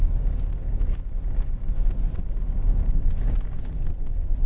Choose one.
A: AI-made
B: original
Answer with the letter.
B